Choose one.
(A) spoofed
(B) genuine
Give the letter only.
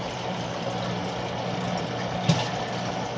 B